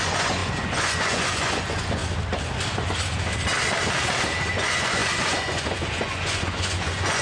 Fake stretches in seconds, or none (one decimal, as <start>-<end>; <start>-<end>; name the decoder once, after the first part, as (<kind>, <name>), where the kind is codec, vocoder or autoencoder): 0.0-2.0 (vocoder, Vocos); 4.5-7.2